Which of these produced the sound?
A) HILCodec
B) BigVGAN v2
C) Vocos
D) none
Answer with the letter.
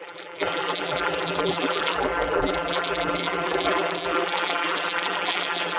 B